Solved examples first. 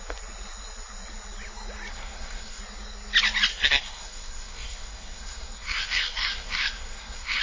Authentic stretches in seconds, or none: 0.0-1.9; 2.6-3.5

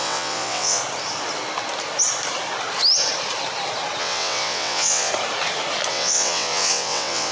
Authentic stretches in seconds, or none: 0.8-4.0; 5.1-5.9